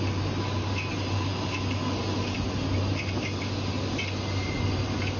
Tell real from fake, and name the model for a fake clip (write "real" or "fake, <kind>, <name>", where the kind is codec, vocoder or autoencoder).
real